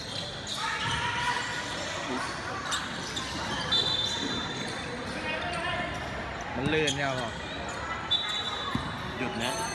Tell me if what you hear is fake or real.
real